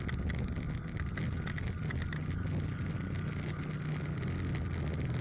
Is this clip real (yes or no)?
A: yes